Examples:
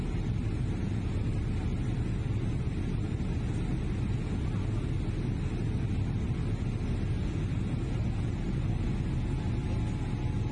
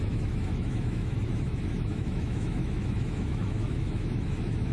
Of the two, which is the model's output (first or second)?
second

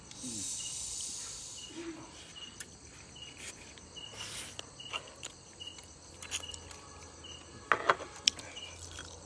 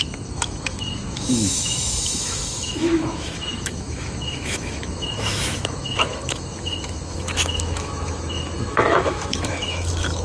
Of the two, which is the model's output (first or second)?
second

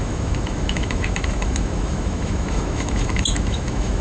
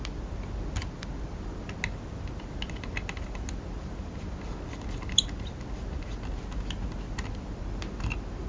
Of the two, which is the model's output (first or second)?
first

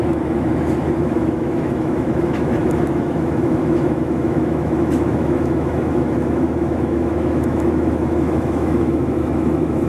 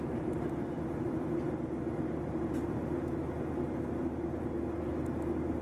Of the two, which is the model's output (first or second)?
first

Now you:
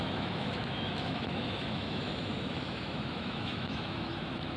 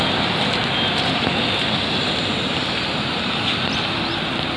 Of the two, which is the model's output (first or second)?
first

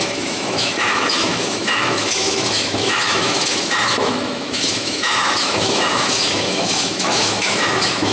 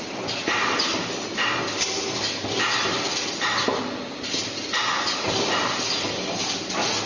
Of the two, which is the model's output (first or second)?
first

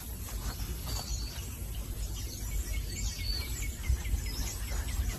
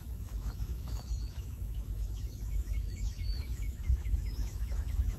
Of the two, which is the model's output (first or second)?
second